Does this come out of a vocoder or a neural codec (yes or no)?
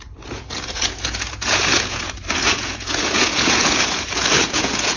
yes